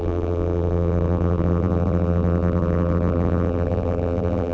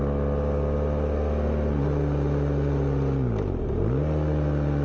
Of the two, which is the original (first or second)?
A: second